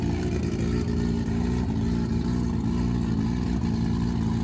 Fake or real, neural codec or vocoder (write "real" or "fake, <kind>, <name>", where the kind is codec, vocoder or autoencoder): real